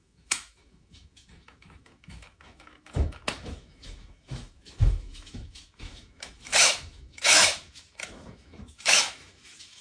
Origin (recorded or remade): remade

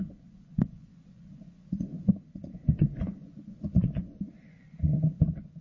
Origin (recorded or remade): remade